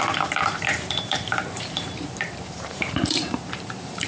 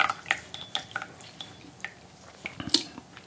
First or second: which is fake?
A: first